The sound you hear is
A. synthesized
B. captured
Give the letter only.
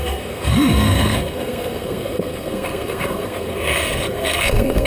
A